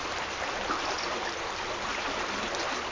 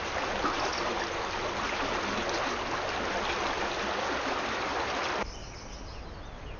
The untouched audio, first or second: second